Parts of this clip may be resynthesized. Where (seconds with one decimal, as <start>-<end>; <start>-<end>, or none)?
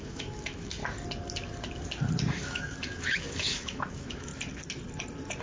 0.0-0.8; 2.3-4.3